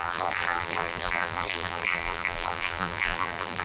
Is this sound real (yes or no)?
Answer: no